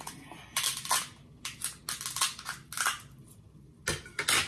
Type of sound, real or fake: real